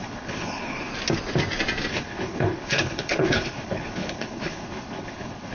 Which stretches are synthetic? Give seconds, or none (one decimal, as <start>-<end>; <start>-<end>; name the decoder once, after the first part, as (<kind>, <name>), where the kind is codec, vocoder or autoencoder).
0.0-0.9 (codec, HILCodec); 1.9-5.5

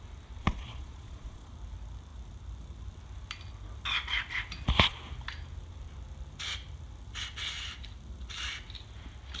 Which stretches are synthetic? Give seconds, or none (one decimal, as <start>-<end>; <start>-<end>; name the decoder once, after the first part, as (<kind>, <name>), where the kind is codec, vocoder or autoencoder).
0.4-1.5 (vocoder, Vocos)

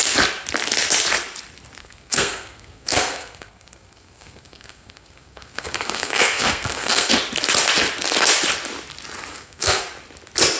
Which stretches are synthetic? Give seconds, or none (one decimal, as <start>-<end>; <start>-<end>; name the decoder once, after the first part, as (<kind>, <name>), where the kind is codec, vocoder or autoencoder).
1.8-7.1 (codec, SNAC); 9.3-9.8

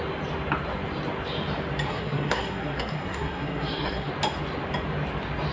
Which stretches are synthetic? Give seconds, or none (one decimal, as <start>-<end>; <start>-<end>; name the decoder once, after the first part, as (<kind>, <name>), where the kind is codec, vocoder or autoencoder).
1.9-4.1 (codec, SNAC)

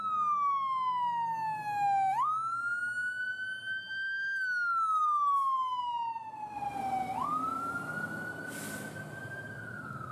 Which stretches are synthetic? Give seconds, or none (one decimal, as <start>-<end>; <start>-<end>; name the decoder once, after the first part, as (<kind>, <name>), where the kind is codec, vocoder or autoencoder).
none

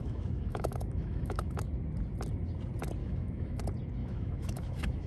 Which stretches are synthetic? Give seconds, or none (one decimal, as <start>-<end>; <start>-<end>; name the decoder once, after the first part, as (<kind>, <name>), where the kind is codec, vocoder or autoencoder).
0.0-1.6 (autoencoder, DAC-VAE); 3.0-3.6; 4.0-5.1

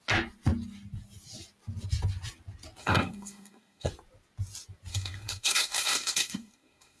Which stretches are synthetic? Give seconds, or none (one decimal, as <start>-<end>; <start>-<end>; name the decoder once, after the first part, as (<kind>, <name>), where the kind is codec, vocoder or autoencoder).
2.8-3.9 (codec, SNAC); 4.9-7.0

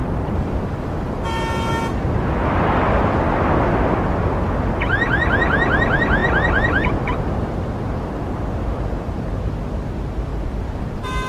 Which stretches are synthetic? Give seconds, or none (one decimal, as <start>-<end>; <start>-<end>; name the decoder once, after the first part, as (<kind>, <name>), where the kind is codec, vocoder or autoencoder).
0.0-1.7 (vocoder, BigVGAN v2); 10.3-11.3